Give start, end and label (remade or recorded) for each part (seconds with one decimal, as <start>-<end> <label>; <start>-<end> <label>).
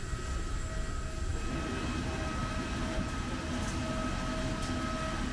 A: 0.0-1.3 recorded; 1.3-3.4 remade; 3.4-5.3 recorded